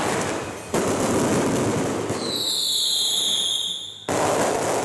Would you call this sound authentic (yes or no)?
yes